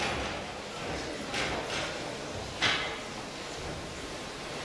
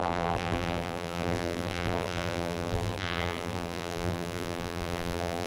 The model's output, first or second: second